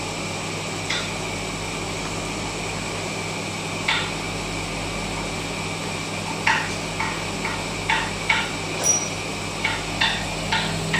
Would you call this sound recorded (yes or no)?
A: yes